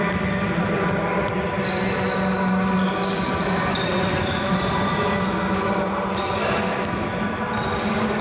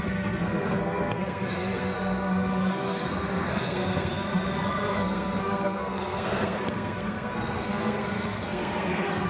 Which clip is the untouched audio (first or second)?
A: first